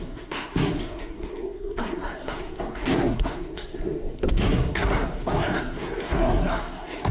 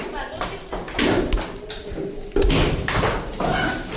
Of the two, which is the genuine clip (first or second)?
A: second